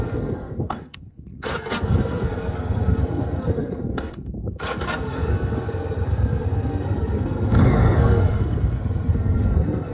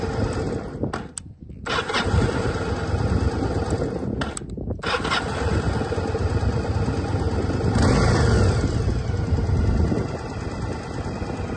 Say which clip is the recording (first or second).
second